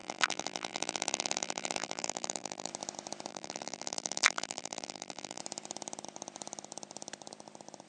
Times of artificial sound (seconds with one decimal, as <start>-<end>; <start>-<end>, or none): 0.0-2.7; 3.3-5.4